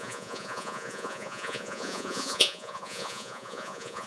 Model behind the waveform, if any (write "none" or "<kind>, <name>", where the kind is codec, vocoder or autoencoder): vocoder, Vocos